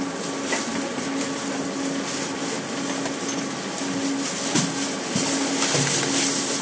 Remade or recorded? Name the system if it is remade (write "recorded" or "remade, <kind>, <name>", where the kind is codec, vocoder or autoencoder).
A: recorded